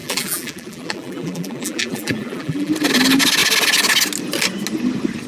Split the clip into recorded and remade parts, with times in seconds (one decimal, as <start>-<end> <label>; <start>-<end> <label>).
0.0-2.7 remade; 2.7-5.3 recorded